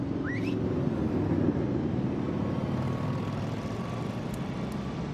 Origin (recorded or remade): remade